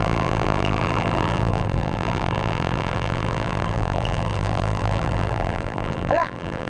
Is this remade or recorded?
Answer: remade